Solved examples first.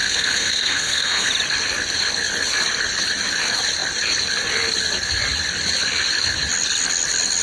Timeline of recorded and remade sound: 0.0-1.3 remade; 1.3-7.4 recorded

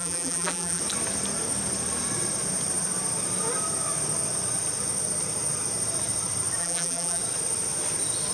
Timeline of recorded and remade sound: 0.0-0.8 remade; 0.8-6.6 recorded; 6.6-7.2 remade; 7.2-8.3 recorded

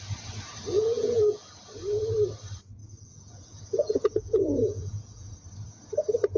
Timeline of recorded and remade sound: 0.0-0.7 recorded; 0.7-1.6 remade; 1.6-2.8 recorded; 2.8-5.3 remade; 5.3-6.4 recorded